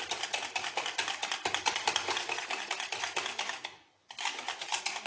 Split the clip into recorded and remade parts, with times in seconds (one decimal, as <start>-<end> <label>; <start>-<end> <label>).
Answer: 0.0-5.1 recorded